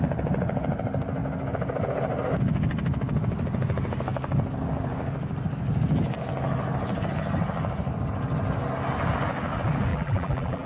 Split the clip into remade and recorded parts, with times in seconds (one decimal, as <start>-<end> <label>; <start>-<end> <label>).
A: 0.0-9.9 recorded; 9.9-10.7 remade